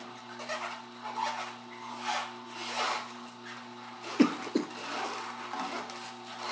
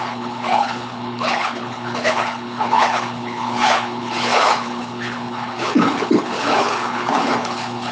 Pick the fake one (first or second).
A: second